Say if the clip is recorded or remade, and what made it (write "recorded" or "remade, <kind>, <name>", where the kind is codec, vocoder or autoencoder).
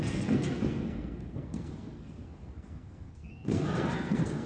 remade, codec, SNAC